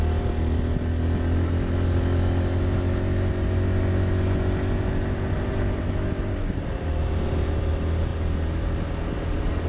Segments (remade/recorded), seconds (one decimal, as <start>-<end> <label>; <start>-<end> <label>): 0.0-9.7 recorded